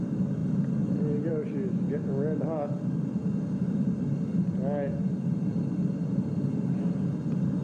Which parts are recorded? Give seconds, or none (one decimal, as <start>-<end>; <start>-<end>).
0.0-7.6